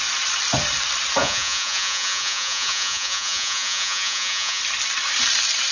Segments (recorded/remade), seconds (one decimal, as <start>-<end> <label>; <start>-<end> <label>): 0.0-1.2 recorded; 1.2-4.6 remade; 4.6-5.7 recorded